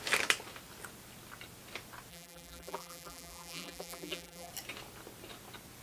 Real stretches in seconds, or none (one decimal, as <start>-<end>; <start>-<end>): 0.0-2.1; 4.5-5.8